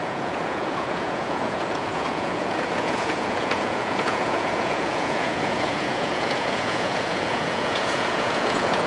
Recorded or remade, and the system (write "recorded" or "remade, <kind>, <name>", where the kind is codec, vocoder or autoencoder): remade, vocoder, Vocos